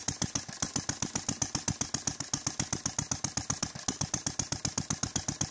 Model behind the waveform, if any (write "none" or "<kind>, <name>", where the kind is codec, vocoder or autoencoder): none